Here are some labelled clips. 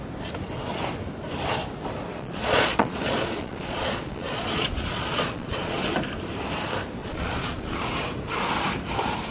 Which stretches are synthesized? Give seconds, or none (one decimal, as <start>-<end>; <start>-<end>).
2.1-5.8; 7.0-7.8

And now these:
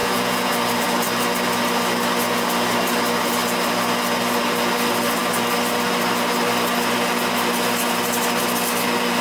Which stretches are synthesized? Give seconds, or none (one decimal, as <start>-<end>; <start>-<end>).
0.0-0.5

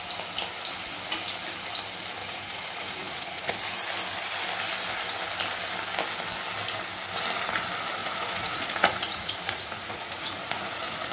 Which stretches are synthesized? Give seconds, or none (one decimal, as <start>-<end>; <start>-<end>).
2.2-3.5; 8.0-11.1